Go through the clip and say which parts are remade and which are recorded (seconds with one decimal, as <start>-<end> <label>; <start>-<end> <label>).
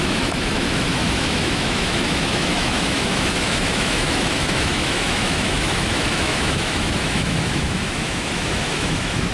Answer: 0.0-9.3 remade